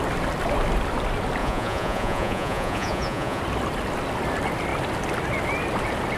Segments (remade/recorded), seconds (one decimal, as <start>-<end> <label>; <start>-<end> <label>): 0.0-1.4 recorded; 1.4-3.4 remade; 3.4-6.2 recorded